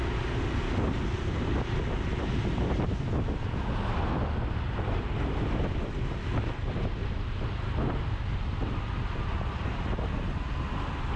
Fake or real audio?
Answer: real